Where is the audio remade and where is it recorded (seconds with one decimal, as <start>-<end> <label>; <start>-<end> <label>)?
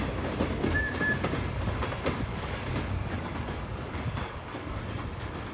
0.0-2.3 recorded; 2.3-4.8 remade; 4.8-5.5 recorded